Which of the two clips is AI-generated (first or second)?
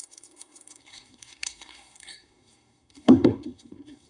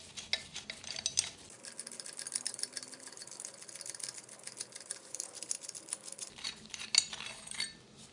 first